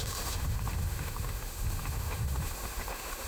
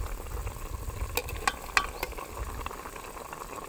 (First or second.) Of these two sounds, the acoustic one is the second